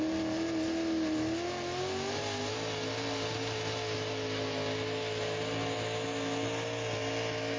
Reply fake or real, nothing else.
real